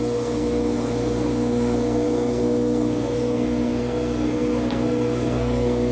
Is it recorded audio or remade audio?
remade